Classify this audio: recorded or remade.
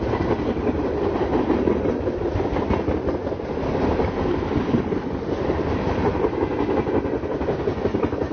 recorded